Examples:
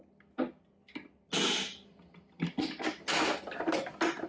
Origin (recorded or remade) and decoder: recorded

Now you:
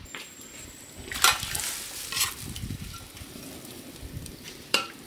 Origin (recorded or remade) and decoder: remade, vocoder, BigVGAN v2